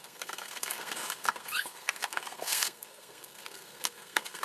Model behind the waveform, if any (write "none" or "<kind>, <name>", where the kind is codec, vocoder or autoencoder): codec, SNAC